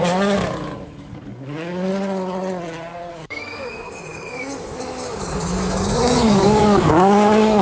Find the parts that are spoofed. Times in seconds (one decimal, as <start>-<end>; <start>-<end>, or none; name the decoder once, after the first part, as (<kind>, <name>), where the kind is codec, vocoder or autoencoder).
0.0-1.9 (codec, DAC); 3.1-7.6